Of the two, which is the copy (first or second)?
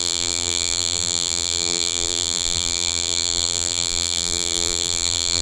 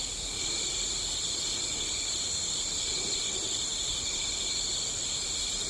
first